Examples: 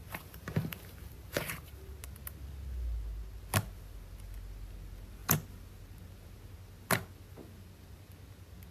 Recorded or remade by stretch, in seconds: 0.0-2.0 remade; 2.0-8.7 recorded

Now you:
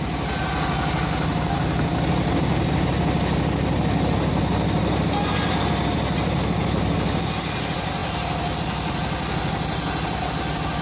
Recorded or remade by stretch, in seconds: 0.0-10.8 recorded

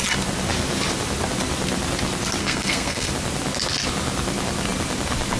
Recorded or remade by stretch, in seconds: 0.0-2.4 recorded; 2.4-3.1 remade; 3.1-5.4 recorded

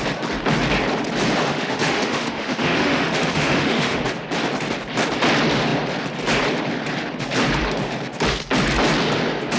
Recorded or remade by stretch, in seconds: 0.0-1.5 recorded; 1.5-4.0 remade; 4.0-9.6 recorded

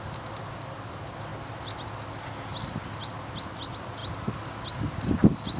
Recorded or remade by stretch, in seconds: 0.0-5.6 recorded